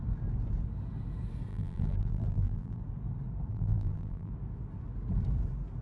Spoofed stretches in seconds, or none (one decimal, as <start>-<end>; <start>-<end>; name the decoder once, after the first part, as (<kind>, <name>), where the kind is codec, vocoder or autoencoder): 1.5-2.8 (vocoder, BigVGAN v2); 3.5-4.3